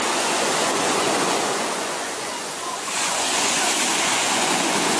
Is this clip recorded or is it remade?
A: remade